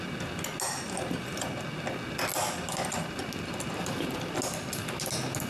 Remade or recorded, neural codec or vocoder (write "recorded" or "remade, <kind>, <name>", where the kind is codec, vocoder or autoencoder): recorded